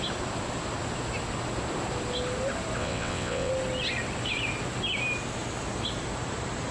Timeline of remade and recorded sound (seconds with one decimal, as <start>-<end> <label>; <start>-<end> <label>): 0.0-2.8 recorded; 2.8-3.5 remade; 3.5-6.7 recorded